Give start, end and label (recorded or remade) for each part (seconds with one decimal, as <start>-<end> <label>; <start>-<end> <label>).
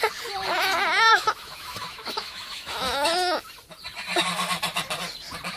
0.0-1.1 recorded; 1.1-3.5 remade; 3.5-5.6 recorded